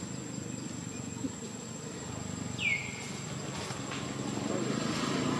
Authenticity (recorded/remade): recorded